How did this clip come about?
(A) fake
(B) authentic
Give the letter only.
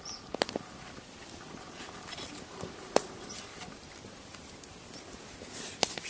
B